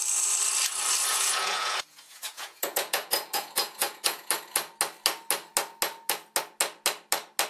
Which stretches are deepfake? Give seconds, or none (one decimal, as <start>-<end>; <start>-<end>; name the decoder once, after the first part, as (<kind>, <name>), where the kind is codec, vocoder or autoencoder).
1.1-4.3 (vocoder, Vocos)